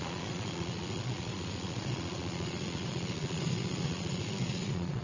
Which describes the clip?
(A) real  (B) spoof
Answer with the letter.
B